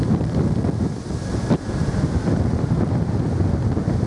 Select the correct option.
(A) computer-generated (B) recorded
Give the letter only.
B